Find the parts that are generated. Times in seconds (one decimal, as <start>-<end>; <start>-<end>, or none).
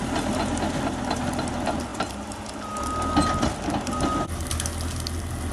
none